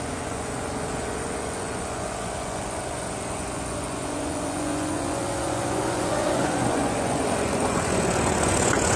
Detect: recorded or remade remade